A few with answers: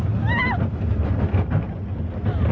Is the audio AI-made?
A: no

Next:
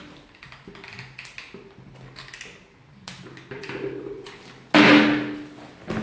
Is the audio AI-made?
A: no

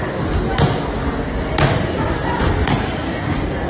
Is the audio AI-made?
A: no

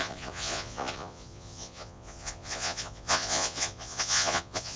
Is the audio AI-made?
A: yes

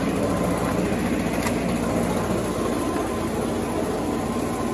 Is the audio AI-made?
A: no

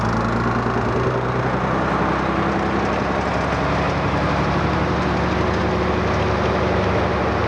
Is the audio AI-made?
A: no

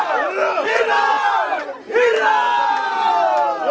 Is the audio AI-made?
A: no